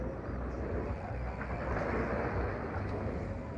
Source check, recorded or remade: recorded